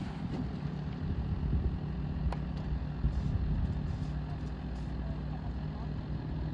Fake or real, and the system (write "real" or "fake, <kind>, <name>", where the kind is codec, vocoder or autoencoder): real